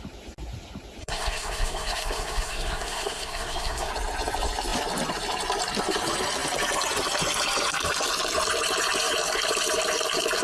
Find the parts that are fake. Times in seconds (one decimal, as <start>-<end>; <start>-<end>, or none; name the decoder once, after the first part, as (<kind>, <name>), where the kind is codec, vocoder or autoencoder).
1.0-3.9 (codec, SNAC)

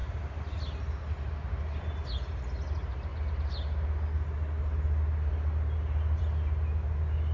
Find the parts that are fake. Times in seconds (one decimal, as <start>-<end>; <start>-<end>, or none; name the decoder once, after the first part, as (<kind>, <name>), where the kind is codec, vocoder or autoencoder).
none

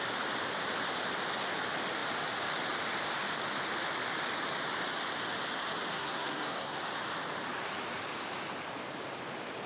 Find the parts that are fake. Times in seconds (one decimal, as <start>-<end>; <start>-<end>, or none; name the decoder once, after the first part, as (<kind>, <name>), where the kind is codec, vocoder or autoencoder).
5.9-6.8 (codec, SNAC)

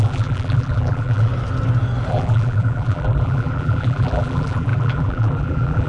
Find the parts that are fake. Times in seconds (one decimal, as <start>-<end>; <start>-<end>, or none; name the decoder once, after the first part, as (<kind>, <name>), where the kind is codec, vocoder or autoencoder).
0.0-1.3 (vocoder, BigVGAN v2); 2.1-5.9

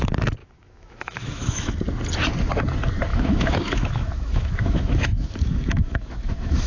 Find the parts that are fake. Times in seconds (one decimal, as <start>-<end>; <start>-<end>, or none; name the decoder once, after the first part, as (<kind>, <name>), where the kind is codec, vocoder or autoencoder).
0.4-1.7 (autoencoder, DAC-VAE); 3.1-6.7

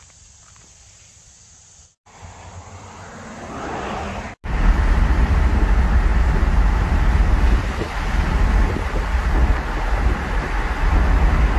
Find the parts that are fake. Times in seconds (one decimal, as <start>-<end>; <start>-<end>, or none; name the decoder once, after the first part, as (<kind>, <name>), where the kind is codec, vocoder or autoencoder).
none

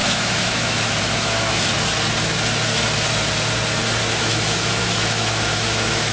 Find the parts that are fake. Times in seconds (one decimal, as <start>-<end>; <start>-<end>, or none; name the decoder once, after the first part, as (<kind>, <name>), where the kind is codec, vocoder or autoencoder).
0.0-1.7 (autoencoder, DAC-VAE); 4.1-6.1

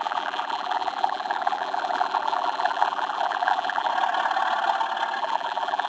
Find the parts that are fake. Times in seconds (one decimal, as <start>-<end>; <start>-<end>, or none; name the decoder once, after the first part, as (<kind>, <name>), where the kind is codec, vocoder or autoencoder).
0.0-3.9 (vocoder, BigVGAN v2); 5.2-5.9